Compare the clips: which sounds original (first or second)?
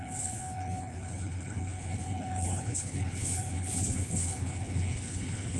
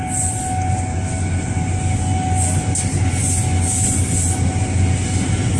second